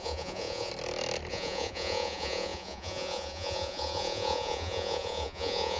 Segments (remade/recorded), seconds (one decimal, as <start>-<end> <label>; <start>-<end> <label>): 0.0-0.7 remade; 0.7-1.3 recorded; 1.3-5.8 remade